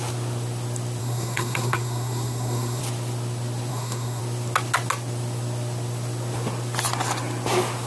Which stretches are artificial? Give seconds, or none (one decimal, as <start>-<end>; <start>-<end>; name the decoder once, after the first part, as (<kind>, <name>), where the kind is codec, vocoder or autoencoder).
1.0-2.8 (codec, SNAC); 3.7-4.2